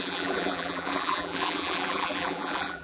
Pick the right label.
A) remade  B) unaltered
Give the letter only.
A